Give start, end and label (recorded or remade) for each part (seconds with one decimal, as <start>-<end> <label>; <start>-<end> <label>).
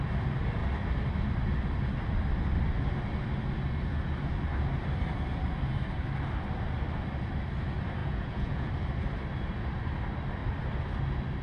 0.0-8.0 recorded; 8.0-8.7 remade; 8.7-11.4 recorded